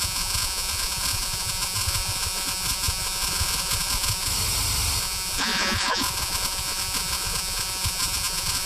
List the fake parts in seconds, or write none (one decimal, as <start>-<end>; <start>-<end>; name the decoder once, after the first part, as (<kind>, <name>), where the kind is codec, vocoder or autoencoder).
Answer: 0.0-4.3 (vocoder, Vocos); 5.0-8.7